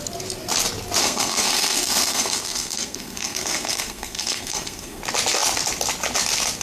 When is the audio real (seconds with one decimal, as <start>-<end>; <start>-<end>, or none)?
0.0-1.0; 5.0-6.6